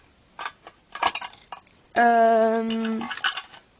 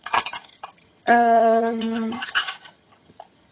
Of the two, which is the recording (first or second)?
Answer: first